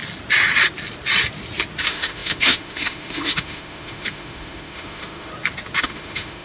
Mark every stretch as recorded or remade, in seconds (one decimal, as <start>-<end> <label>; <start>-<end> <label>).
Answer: 0.0-1.8 recorded; 1.8-5.3 remade; 5.3-5.8 recorded; 5.8-6.4 remade